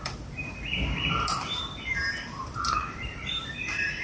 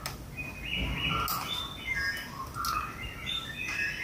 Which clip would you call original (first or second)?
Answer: second